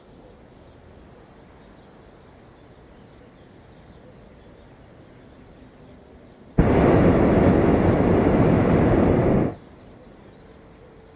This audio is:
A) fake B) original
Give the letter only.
B